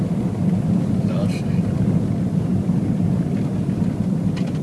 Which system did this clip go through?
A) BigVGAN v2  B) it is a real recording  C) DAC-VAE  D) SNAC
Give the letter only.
B